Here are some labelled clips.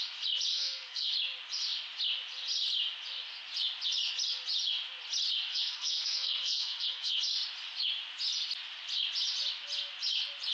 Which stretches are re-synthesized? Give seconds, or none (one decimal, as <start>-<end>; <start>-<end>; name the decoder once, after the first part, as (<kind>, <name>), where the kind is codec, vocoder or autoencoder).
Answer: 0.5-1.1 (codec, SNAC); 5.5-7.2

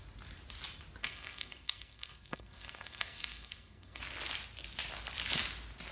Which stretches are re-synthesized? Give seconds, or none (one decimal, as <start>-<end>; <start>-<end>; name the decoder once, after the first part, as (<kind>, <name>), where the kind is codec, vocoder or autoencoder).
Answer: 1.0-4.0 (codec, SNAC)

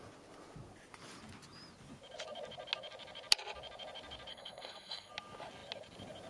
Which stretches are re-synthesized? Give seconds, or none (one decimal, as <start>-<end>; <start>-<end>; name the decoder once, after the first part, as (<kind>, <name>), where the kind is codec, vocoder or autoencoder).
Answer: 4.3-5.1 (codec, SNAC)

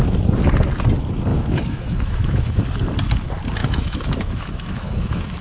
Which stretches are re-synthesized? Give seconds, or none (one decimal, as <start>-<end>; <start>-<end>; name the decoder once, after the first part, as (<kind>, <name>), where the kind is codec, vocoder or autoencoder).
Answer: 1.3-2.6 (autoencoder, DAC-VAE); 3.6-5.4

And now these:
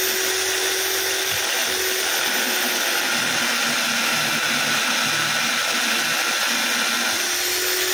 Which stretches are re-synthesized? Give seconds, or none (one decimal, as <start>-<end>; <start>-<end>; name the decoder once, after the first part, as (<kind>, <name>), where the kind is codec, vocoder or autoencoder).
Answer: none